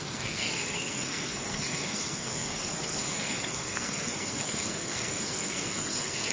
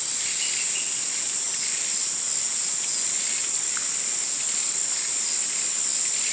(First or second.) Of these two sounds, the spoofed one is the first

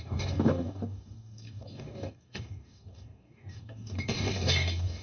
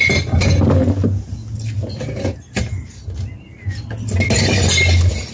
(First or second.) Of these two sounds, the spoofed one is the first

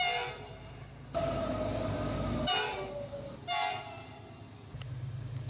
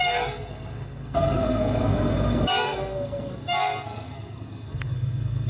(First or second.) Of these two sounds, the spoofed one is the second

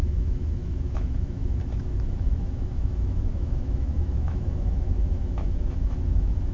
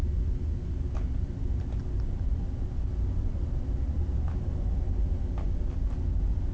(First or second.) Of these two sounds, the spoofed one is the first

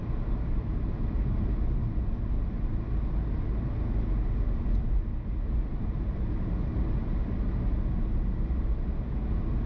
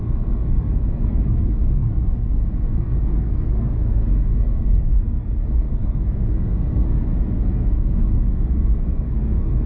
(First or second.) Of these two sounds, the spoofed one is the second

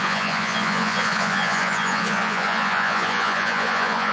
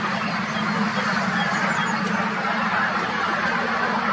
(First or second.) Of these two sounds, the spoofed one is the first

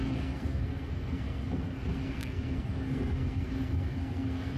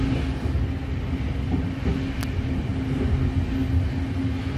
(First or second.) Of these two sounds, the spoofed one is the first